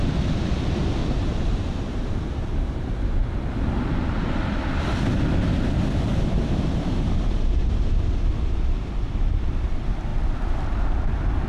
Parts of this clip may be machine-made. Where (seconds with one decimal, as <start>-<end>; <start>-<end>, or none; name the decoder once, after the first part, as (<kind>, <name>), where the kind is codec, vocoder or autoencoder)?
1.0-3.5 (vocoder, BigVGAN v2); 6.1-9.0